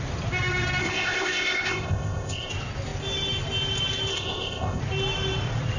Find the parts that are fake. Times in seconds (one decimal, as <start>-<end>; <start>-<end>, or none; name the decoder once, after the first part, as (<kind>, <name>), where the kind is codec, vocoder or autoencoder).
0.8-2.5 (codec, ZipCodec); 4.1-4.8